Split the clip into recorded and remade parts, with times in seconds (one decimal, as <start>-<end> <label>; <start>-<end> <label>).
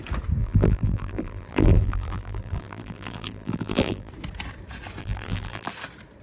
0.0-0.4 recorded; 0.4-4.1 remade; 4.1-5.0 recorded; 5.0-5.7 remade; 5.7-6.2 recorded